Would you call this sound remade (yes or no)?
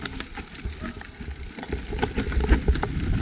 no